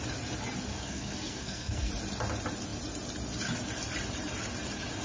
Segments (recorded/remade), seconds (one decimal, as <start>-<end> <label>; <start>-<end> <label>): 0.0-0.7 recorded; 0.7-1.9 remade; 1.9-5.0 recorded